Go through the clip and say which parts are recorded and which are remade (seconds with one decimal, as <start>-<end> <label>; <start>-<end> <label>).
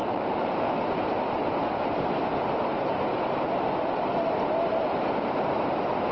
0.0-0.7 remade; 0.7-6.1 recorded